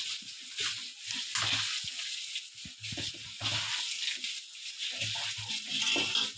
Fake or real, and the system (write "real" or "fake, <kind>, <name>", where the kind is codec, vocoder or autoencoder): real